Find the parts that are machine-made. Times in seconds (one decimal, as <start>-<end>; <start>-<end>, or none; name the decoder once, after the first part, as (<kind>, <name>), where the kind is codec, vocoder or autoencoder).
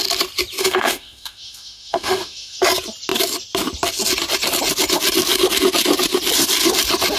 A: 0.6-2.6 (autoencoder, DAC-VAE)